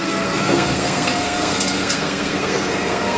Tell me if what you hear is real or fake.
fake